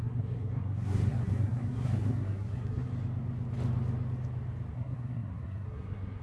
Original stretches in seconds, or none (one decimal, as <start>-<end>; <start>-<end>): 2.9-4.7